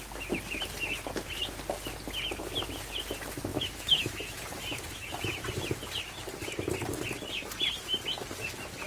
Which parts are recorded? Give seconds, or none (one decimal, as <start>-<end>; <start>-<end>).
0.0-3.5; 4.2-8.9